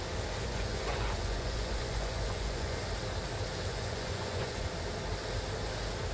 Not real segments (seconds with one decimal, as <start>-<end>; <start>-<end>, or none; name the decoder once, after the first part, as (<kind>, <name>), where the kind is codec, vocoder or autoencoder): 0.4-2.8 (vocoder, Vocos); 3.7-4.7